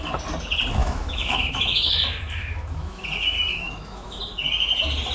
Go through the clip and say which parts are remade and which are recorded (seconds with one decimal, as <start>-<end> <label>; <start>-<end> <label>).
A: 0.0-0.8 recorded; 0.8-1.9 remade; 1.9-2.4 recorded; 2.4-3.0 remade; 3.0-3.5 recorded; 3.5-4.2 remade; 4.2-5.1 recorded

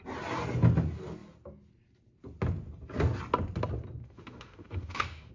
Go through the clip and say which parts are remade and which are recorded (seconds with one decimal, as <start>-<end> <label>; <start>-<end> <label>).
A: 0.0-4.0 recorded; 4.0-5.3 remade

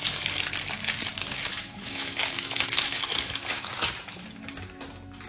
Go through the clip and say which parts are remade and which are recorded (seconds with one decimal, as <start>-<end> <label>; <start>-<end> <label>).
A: 0.0-1.5 recorded; 1.5-3.7 remade; 3.7-5.3 recorded

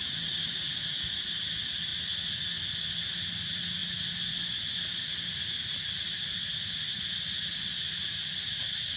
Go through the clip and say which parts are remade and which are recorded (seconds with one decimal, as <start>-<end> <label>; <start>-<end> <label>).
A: 0.0-9.0 recorded

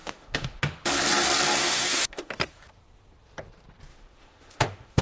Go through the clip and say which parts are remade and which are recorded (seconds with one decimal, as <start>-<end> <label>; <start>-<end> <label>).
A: 0.0-0.6 remade; 0.6-1.6 recorded; 1.6-2.3 remade; 2.3-3.9 recorded; 3.9-5.0 remade